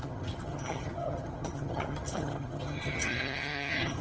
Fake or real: fake